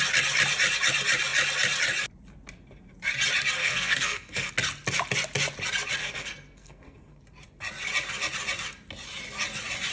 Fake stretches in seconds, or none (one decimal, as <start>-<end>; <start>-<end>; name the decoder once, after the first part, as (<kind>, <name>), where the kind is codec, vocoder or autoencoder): 3.6-4.5 (codec, SNAC); 6.0-7.2